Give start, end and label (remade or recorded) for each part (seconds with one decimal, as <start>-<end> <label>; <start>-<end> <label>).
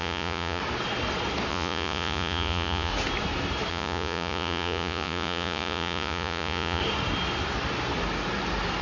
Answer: 0.0-0.6 remade; 0.6-1.5 recorded; 1.5-2.9 remade; 2.9-3.7 recorded; 3.7-6.8 remade; 6.8-8.8 recorded